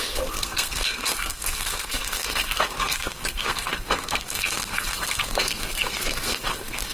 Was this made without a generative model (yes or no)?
no